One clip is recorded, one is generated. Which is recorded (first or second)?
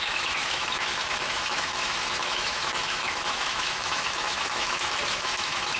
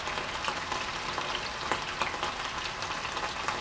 second